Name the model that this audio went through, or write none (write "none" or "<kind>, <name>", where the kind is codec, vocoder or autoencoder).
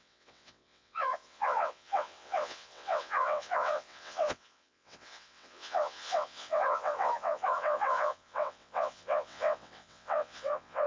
vocoder, WaveNeXt